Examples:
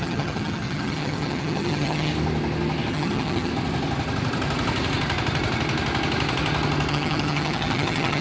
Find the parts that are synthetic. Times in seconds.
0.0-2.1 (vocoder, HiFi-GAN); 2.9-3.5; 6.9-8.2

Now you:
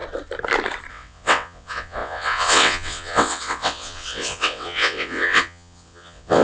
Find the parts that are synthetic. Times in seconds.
0.9-6.4 (vocoder, WaveNeXt)

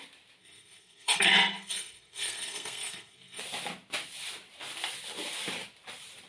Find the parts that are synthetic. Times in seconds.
0.4-3.4 (codec, SNAC)

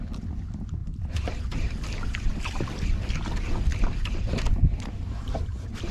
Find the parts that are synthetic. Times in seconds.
none

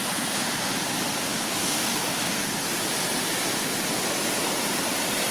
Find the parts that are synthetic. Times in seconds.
1.3-2.5 (codec, DAC)

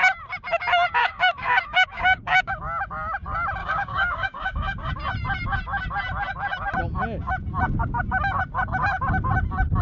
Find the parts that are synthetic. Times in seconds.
1.0-2.5 (codec, DAC); 3.6-4.9